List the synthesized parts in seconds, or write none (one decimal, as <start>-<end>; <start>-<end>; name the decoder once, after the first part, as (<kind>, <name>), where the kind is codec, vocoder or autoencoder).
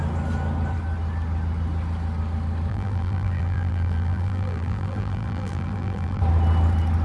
2.7-6.2 (vocoder, BigVGAN v2)